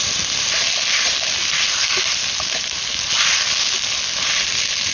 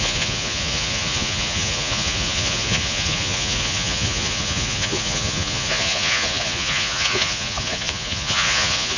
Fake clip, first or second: second